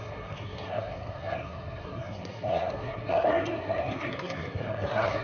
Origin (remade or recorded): remade